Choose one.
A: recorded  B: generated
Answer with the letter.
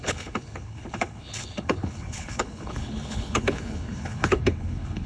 B